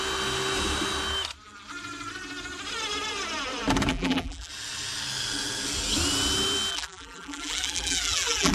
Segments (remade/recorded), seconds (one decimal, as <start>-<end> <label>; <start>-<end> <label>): 0.0-3.9 recorded; 3.9-4.5 remade; 4.5-6.7 recorded; 6.7-8.5 remade